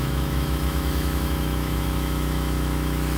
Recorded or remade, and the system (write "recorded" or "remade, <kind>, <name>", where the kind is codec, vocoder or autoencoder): remade, autoencoder, DAC-VAE